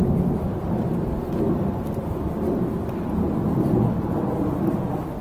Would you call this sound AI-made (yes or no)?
no